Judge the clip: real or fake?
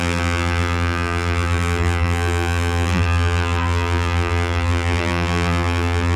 fake